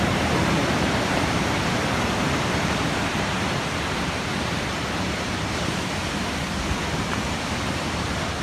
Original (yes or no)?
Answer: no